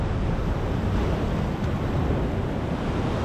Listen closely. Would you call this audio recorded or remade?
recorded